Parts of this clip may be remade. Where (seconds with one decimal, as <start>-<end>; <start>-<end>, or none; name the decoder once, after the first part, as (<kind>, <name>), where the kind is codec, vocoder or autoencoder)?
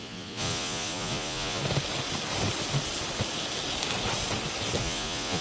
0.0-1.6 (vocoder, Vocos); 4.8-5.4